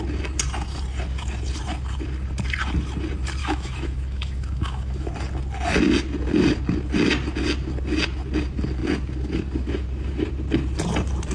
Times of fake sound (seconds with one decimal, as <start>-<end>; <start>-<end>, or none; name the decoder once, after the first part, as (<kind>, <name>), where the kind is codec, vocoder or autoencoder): 3.4-5.1 (autoencoder, DAC-VAE)